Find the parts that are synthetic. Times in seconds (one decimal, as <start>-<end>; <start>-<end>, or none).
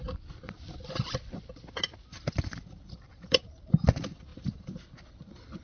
2.1-3.4; 4.3-4.8